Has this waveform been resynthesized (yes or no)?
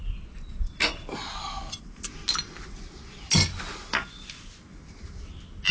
no